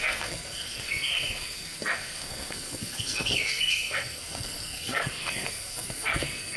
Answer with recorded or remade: remade